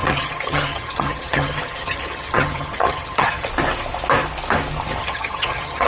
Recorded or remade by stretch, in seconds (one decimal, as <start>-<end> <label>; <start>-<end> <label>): 0.0-3.5 remade; 3.5-5.0 recorded; 5.0-5.9 remade